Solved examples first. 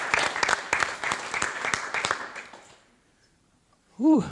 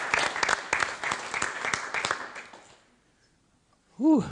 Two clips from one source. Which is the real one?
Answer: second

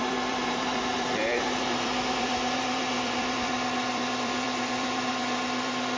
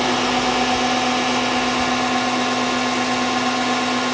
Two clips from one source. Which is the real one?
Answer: second